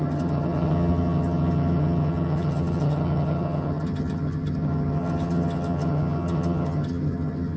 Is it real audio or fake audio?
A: fake